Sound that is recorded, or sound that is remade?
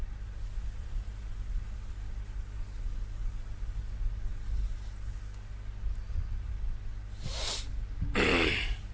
recorded